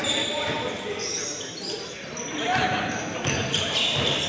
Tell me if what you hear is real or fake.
fake